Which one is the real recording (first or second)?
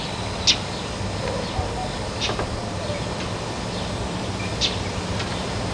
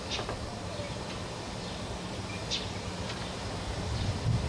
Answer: first